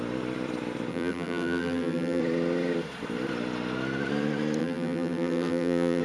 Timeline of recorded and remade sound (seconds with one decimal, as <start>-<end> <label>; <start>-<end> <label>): 0.0-0.9 recorded; 0.9-2.2 remade; 2.2-4.6 recorded; 4.6-6.0 remade